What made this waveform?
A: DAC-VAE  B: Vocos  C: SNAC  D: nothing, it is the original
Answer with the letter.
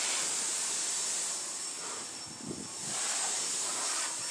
D